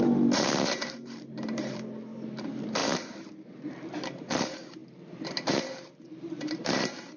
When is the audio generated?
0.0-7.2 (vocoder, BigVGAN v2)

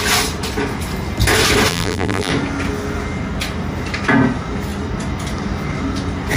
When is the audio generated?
1.7-2.3 (vocoder, BigVGAN v2)

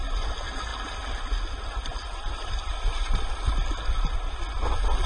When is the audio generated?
none

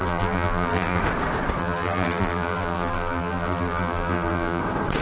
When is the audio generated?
0.0-1.0 (vocoder, BigVGAN v2); 1.6-4.6

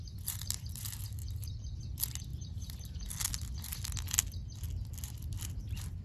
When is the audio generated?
1.2-1.8 (vocoder, BigVGAN v2); 2.3-3.1

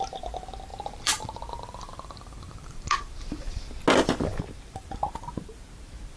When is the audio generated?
0.7-3.7 (vocoder, BigVGAN v2)